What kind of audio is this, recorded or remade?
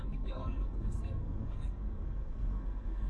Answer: remade